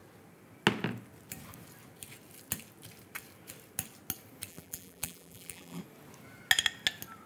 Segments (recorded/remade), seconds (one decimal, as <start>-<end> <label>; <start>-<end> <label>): 0.0-4.5 recorded; 4.5-5.8 remade; 5.8-7.3 recorded

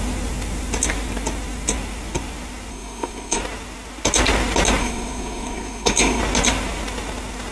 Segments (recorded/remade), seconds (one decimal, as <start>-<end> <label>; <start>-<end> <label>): 0.0-2.7 recorded; 2.7-3.4 remade; 3.4-4.8 recorded; 4.8-6.2 remade; 6.2-7.5 recorded